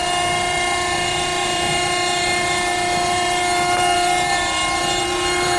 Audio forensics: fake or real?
fake